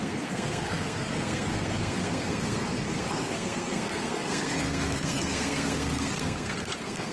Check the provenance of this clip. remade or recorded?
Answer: remade